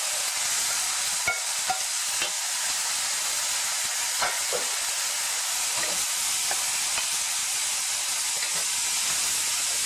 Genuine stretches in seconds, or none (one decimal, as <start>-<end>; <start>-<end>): 0.0-9.9